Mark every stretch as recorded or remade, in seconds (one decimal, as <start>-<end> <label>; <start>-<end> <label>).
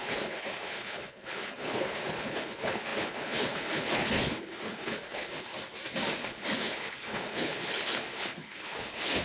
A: 0.0-5.5 remade; 5.5-6.2 recorded; 6.2-9.2 remade